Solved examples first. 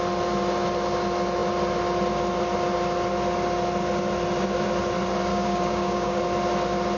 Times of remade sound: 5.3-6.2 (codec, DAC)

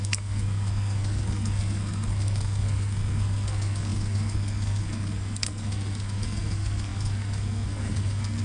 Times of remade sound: 0.0-8.4 (codec, SNAC)

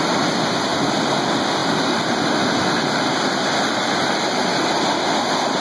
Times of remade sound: none

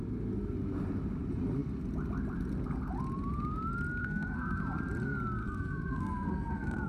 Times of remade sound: 4.0-4.6 (codec, SNAC); 5.4-6.9

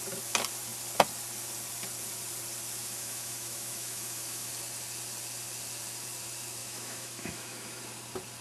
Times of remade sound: 2.8-4.5 (autoencoder, DAC-VAE); 6.6-7.8

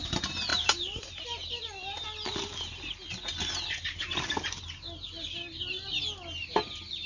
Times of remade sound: none

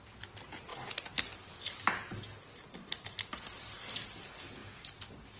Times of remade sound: none

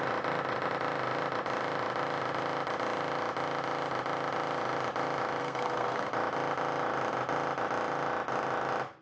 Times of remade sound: 5.4-6.1 (codec, SNAC)